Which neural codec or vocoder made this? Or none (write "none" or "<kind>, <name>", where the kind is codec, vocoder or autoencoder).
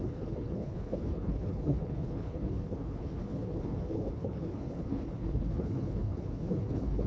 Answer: codec, HILCodec